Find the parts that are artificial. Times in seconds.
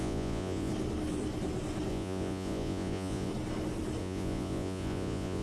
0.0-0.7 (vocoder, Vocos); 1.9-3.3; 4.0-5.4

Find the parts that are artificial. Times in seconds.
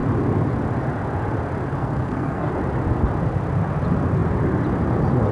1.8-2.5 (codec, SNAC)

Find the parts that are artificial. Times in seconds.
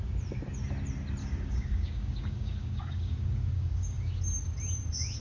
1.2-4.2 (codec, DAC)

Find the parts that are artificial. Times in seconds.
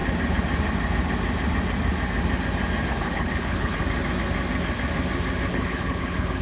2.9-3.8 (codec, HILCodec); 5.5-6.4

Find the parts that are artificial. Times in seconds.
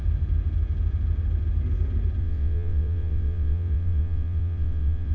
2.2-5.1 (vocoder, WaveNeXt)